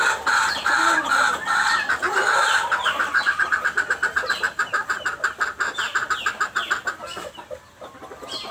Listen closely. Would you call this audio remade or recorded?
recorded